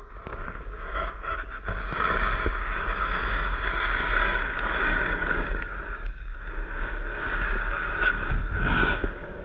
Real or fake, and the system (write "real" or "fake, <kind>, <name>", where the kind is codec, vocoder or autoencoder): fake, codec, DAC